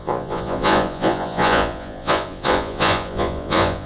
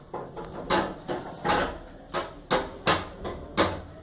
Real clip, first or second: second